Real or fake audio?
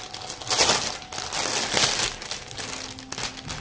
real